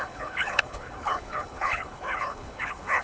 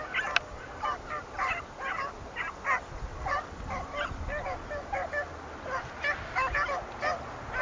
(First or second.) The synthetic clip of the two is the first